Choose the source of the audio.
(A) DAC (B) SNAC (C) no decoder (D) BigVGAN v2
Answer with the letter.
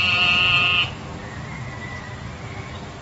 C